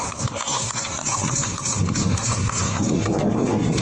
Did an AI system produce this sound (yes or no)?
yes